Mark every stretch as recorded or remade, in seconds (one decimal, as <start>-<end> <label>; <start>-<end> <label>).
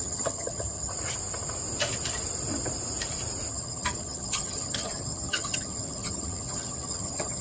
0.0-0.9 remade; 0.9-3.5 recorded; 3.5-7.4 remade